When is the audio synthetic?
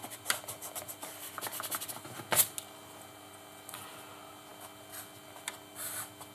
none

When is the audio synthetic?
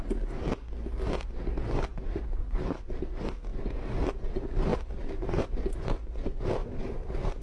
1.9-2.9 (vocoder, BigVGAN v2); 4.7-5.3; 6.6-7.4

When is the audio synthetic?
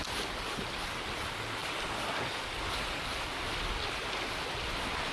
none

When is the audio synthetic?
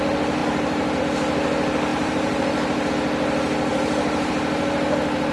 0.4-1.0 (vocoder, BigVGAN v2); 1.9-2.9; 3.7-4.3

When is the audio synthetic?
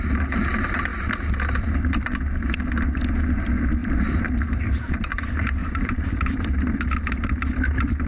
3.8-5.1 (vocoder, BigVGAN v2); 5.6-6.3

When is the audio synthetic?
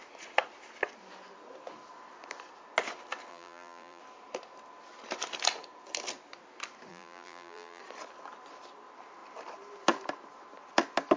3.3-4.0 (vocoder, BigVGAN v2); 6.9-7.8